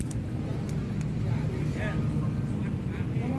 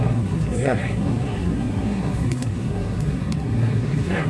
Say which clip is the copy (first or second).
second